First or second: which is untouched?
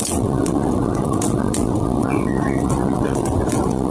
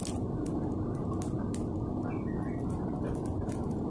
second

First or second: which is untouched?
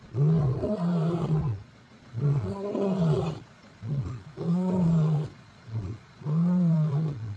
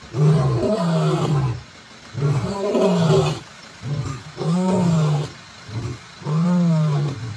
second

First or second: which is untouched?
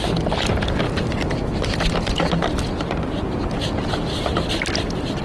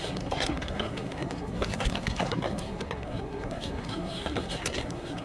first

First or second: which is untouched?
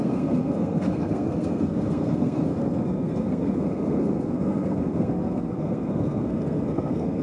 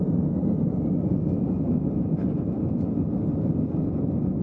second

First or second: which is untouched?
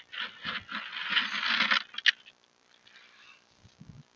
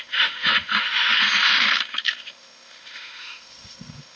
first